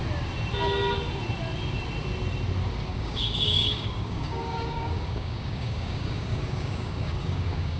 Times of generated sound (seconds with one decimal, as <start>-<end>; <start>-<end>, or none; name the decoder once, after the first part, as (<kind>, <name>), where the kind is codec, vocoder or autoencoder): 2.9-7.8 (codec, DAC)